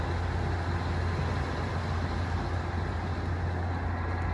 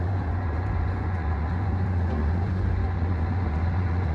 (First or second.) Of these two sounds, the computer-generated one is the second